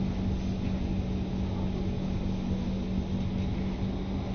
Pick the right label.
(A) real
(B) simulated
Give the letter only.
A